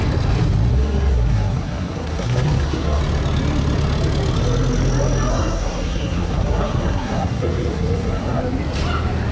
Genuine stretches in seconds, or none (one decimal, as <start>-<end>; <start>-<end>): 0.0-0.7; 3.0-5.3; 8.4-9.3